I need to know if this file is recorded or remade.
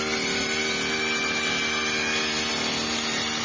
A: recorded